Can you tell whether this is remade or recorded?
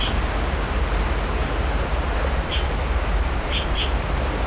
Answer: recorded